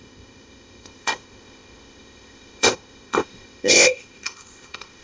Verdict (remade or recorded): remade